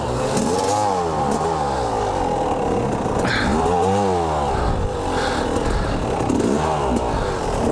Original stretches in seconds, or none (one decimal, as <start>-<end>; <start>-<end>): 0.0-7.7